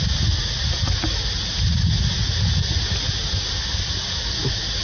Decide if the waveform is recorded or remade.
recorded